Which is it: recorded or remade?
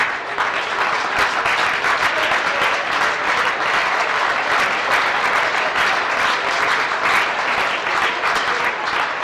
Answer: recorded